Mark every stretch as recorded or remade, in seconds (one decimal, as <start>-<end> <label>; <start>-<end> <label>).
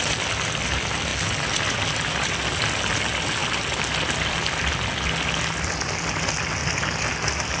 0.0-3.4 recorded; 3.4-4.7 remade; 4.7-6.6 recorded; 6.6-7.6 remade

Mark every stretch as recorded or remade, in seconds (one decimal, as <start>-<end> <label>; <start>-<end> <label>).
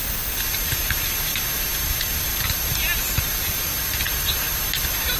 0.0-5.2 recorded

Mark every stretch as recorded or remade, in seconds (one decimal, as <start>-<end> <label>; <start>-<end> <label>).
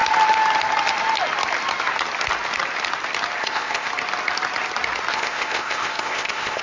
0.0-3.4 recorded; 3.4-3.9 remade; 3.9-5.1 recorded; 5.1-6.6 remade